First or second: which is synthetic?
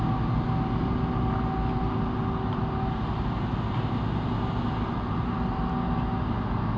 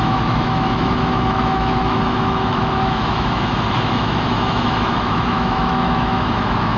second